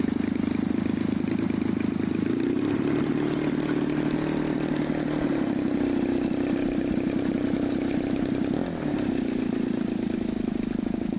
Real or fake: real